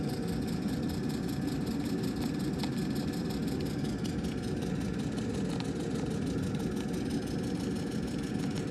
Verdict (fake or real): real